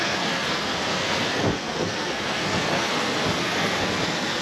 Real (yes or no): no